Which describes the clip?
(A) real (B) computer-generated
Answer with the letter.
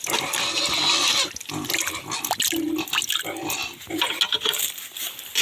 A